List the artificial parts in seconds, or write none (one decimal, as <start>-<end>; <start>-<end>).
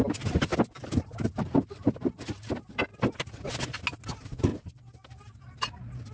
0.5-2.1; 2.9-3.6